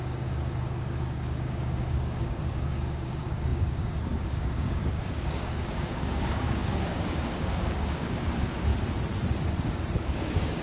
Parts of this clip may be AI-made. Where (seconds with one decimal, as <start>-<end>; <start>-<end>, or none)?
0.0-8.7; 10.0-10.6